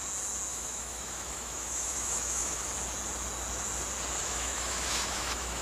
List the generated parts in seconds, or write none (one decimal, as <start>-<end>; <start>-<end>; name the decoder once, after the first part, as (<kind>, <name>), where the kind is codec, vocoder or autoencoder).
0.5-2.6 (autoencoder, DAC-VAE); 4.2-5.6